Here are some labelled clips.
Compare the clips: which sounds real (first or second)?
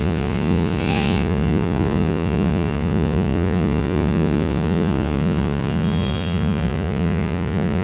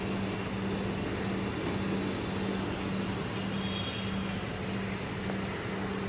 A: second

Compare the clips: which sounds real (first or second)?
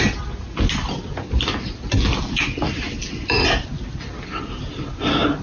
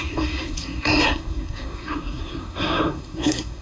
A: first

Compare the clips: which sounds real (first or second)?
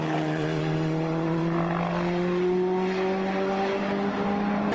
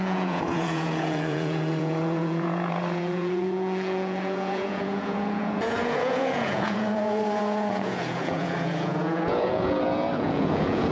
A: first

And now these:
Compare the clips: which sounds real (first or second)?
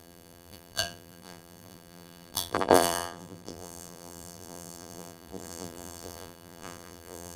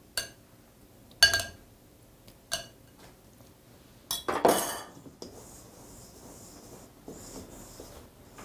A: second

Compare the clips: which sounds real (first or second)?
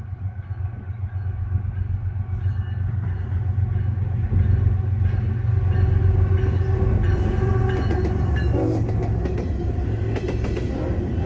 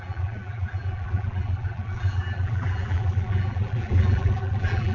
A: first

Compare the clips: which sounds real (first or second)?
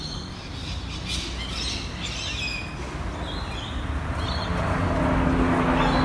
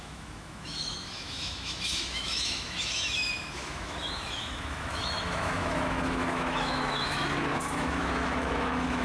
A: first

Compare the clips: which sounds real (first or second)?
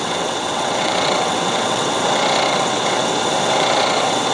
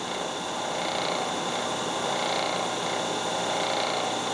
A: second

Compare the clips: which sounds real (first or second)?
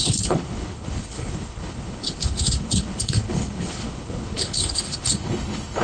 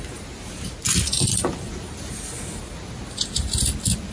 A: second